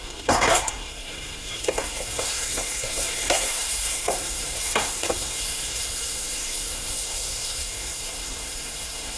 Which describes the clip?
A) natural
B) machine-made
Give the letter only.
B